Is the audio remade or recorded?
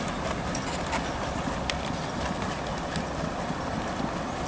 recorded